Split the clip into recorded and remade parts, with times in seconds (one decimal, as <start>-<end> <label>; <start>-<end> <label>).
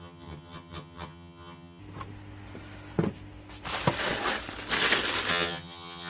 0.0-1.8 remade; 1.8-5.3 recorded; 5.3-6.1 remade